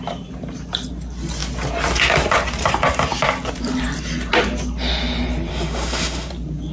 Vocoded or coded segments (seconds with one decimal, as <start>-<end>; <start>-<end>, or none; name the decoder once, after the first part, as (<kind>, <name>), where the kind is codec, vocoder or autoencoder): 5.5-6.3 (autoencoder, DAC-VAE)